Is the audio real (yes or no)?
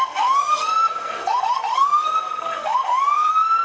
no